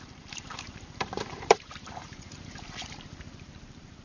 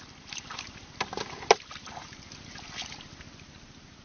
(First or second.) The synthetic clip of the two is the first